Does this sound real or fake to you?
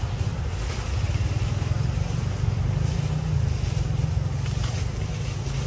real